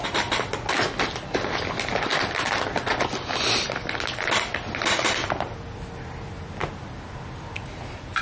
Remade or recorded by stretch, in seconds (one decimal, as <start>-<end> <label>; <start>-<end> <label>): 0.0-8.2 recorded